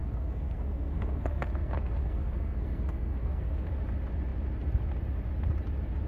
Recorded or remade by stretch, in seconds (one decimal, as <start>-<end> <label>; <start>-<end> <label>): 0.0-3.7 remade; 3.7-6.1 recorded